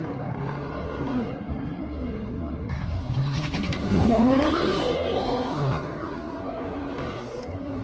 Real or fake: fake